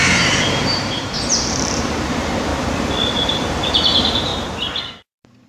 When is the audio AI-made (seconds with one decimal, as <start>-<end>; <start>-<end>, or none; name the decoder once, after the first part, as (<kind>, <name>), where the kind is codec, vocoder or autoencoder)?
0.0-2.5 (vocoder, BigVGAN v2); 3.1-4.3; 4.8-5.5